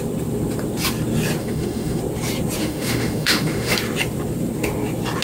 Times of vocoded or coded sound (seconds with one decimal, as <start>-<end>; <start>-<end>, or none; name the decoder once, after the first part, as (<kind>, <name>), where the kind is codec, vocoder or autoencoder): 1.4-2.0 (autoencoder, DAC-VAE); 2.6-3.7